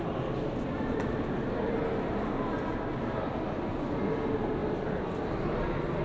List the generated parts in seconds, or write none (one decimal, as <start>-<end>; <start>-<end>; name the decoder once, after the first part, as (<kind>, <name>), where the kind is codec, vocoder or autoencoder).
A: none